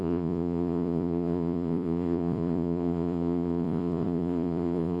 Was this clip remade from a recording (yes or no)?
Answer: yes